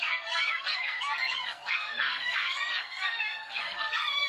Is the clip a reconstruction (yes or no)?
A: yes